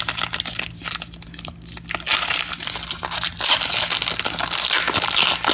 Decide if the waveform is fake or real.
real